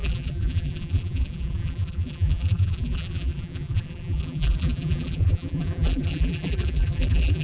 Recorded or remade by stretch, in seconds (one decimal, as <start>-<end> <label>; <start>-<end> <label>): 0.0-7.4 remade

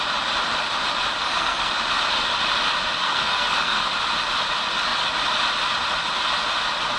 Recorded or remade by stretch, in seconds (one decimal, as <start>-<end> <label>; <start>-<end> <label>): 0.0-1.2 recorded; 1.2-1.7 remade; 1.7-3.0 recorded; 3.0-3.8 remade; 3.8-7.0 recorded

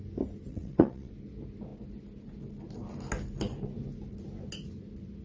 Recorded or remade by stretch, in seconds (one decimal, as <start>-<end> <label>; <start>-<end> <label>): 0.0-0.5 recorded; 0.5-1.1 remade; 1.1-5.2 recorded

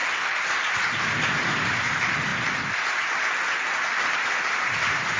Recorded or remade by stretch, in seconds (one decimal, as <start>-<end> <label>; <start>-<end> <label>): 0.0-1.9 recorded; 1.9-2.3 remade; 2.3-4.0 recorded; 4.0-5.2 remade